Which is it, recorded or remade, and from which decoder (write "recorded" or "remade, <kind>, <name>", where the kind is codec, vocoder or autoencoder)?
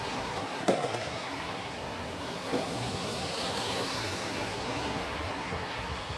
remade, codec, SNAC